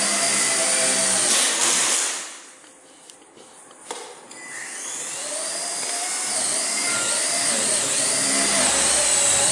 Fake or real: real